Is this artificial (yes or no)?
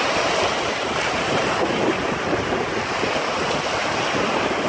no